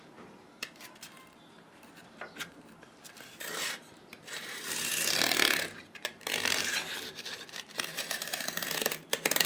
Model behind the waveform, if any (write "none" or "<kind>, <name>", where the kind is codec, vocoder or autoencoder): vocoder, BigVGAN v2